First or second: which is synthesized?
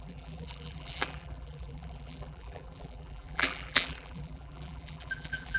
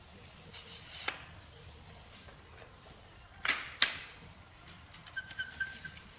first